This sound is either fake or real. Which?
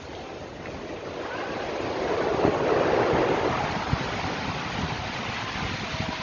real